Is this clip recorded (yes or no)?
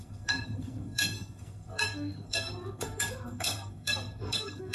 no